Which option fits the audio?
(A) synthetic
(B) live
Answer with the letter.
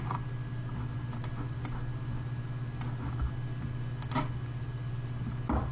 B